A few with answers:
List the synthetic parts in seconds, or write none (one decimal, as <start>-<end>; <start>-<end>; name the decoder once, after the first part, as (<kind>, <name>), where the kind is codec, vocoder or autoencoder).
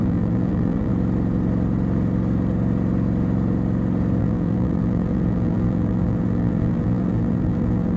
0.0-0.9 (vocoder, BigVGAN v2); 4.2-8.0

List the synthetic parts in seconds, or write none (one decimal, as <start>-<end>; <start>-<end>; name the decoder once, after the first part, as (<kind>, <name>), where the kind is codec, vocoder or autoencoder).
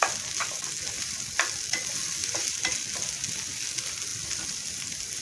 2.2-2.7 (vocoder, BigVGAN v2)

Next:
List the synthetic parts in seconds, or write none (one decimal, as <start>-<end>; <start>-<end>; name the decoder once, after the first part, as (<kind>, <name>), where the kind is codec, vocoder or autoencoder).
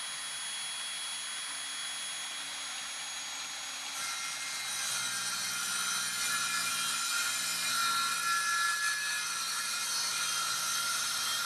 10.1-10.9 (vocoder, BigVGAN v2)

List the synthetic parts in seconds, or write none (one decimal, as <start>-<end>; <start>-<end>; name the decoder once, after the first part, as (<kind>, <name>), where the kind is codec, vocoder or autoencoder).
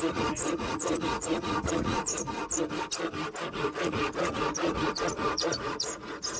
0.0-2.4 (vocoder, Vocos); 3.5-6.4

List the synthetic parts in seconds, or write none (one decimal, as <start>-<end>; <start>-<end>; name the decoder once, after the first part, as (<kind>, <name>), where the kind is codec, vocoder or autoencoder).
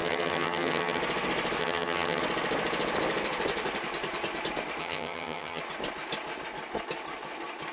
0.0-1.0 (vocoder, HiFi-GAN); 1.6-2.2; 4.8-5.6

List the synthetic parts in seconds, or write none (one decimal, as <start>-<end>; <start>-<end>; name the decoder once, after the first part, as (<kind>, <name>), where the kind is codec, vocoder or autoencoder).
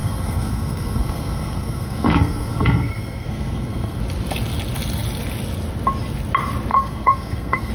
0.0-4.0 (codec, SNAC); 6.7-7.7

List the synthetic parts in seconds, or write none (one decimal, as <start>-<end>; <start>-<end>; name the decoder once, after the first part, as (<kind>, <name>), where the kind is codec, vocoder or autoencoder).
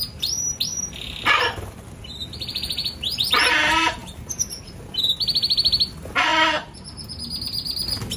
4.0-4.6 (vocoder, BigVGAN v2)